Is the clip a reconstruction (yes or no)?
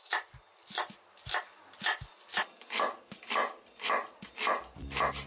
no